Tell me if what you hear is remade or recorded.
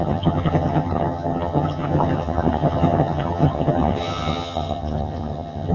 remade